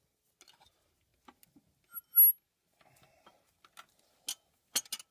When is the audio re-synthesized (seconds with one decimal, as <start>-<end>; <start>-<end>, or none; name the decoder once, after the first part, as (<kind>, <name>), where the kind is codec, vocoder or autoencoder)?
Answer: none